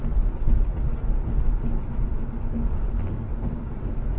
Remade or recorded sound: recorded